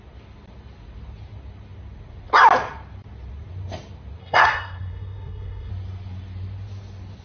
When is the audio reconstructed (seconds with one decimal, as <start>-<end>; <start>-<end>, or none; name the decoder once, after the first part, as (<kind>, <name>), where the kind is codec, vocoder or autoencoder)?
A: 4.2-5.7 (codec, SNAC)